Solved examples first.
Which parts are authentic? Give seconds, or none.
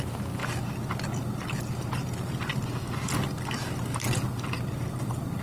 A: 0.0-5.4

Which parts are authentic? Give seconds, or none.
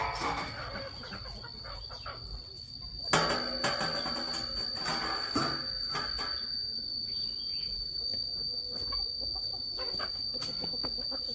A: 0.0-7.5; 8.0-11.3